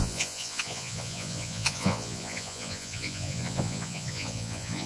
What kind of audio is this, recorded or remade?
remade